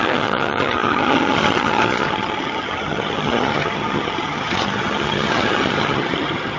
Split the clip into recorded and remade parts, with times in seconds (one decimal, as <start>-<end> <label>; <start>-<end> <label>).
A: 0.0-6.6 remade